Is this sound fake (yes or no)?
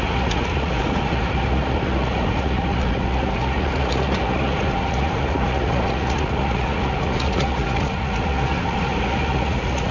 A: yes